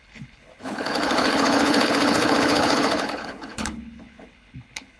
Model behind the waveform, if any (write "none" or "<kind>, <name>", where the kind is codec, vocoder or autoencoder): codec, HILCodec